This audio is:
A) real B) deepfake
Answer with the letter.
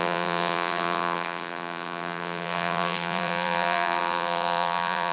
B